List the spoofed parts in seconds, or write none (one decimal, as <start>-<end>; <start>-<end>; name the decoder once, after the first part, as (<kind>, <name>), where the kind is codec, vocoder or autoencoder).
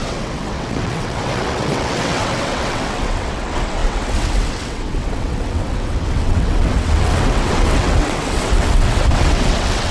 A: 0.0-9.9 (vocoder, WaveNeXt)